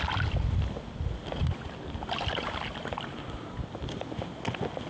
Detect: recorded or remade recorded